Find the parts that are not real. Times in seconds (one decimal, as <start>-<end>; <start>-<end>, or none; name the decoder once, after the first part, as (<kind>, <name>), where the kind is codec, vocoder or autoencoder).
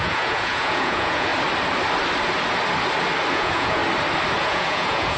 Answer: 0.0-1.3 (vocoder, Vocos); 3.3-3.8; 4.4-5.2